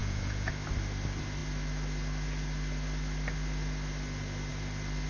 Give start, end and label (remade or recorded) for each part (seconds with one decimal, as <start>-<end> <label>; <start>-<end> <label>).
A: 0.0-0.5 remade; 0.5-5.1 recorded